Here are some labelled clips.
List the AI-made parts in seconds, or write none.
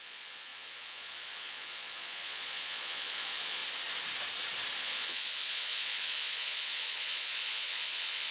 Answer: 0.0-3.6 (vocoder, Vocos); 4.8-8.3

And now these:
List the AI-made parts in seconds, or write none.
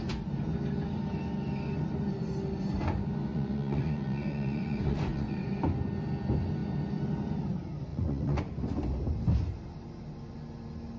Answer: 3.3-5.5 (vocoder, Vocos); 7.9-8.4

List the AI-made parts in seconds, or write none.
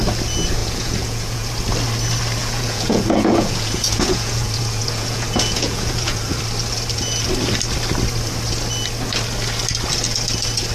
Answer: 0.6-1.5 (vocoder, Vocos); 2.4-6.4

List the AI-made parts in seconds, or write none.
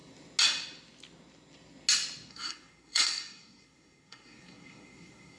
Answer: 2.3-5.4 (codec, SNAC)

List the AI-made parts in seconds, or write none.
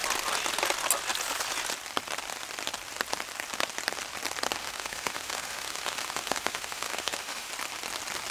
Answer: 4.6-7.5 (autoencoder, DAC-VAE)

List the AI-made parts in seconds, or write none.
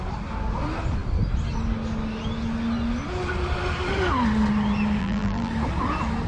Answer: 5.0-5.5 (vocoder, BigVGAN v2)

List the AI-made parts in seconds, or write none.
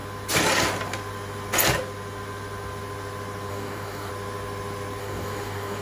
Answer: 3.5-4.1 (codec, DAC); 5.0-5.8